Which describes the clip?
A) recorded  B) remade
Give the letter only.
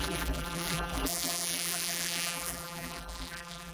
B